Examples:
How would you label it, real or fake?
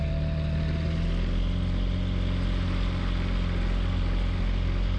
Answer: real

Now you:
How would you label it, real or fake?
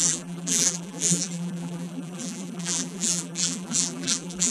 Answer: fake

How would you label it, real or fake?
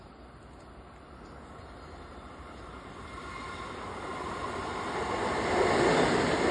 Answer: real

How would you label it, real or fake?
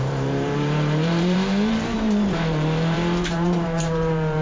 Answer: fake